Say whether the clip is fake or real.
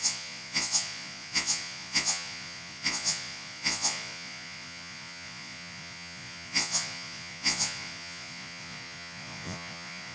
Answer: fake